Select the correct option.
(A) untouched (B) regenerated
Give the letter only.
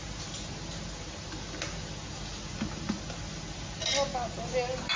A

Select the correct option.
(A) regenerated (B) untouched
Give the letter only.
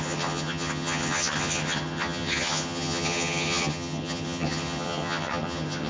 A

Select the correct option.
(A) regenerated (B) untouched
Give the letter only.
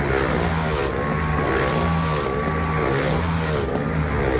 B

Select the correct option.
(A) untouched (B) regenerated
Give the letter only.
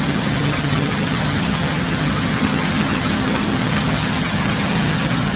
B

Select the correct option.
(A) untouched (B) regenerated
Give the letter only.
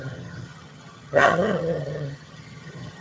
B